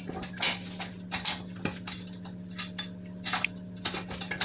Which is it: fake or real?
real